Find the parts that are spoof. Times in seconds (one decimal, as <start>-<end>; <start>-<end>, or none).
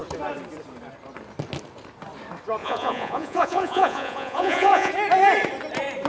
2.6-4.9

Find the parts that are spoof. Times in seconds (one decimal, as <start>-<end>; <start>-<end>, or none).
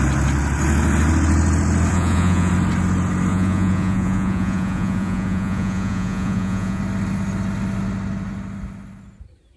1.9-2.5; 3.3-6.8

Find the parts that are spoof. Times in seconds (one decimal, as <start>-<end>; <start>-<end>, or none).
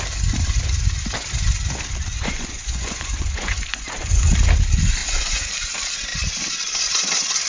2.1-4.3; 5.0-5.5